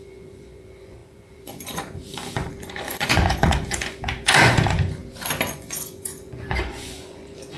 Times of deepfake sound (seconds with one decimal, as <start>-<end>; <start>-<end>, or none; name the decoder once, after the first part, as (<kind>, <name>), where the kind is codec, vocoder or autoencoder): 0.0-5.0 (vocoder, Vocos); 5.5-7.6